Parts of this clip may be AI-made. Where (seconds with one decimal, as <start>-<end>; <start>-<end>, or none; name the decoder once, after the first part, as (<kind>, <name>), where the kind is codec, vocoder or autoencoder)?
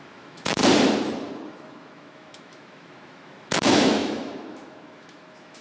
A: 0.0-0.6 (autoencoder, DAC-VAE); 1.5-5.6